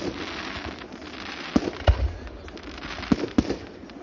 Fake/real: real